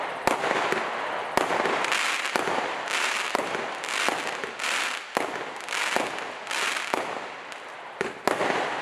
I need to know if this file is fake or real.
real